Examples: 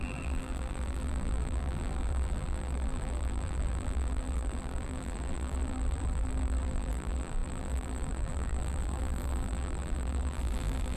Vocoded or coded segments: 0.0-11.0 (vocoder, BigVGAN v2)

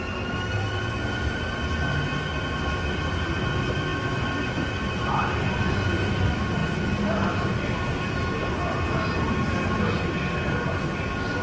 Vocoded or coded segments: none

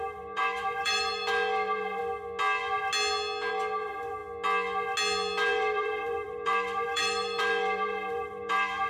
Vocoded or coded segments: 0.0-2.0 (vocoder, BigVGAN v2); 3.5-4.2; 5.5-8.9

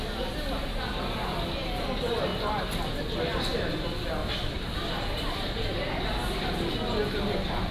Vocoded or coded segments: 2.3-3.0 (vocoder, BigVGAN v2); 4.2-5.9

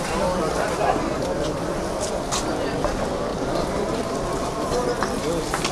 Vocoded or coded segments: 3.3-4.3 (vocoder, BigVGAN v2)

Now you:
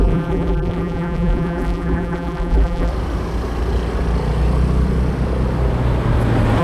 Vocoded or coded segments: 0.0-2.9 (vocoder, BigVGAN v2)

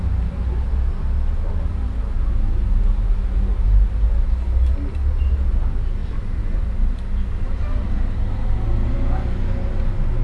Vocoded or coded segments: 6.0-6.6 (vocoder, BigVGAN v2)